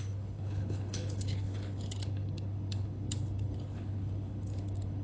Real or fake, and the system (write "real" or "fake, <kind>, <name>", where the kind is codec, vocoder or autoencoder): fake, codec, HILCodec